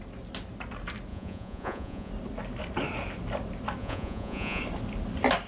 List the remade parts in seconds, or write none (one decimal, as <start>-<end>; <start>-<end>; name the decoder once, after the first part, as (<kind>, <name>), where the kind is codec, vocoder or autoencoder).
1.1-2.1 (vocoder, Vocos); 3.8-4.6